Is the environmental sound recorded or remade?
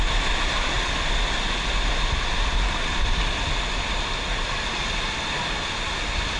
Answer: recorded